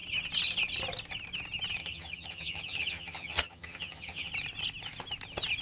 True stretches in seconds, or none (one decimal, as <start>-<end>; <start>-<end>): 0.0-1.8; 4.3-5.6

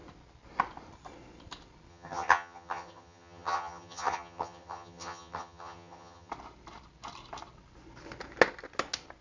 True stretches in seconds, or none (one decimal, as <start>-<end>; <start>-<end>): 0.0-1.9; 6.3-9.2

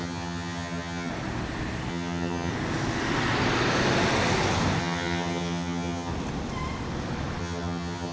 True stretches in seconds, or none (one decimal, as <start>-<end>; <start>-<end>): 1.1-1.9; 2.5-4.8; 6.1-7.4

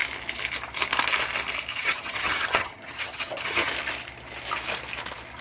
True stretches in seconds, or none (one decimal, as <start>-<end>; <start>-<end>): 0.0-1.7; 3.7-5.4

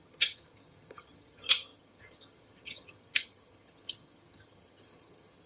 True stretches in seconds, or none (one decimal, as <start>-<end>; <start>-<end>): none